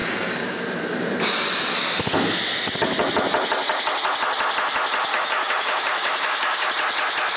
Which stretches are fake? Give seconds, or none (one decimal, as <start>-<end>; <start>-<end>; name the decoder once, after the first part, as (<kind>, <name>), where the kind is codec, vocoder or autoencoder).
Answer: 0.0-0.6 (codec, DAC); 5.1-6.7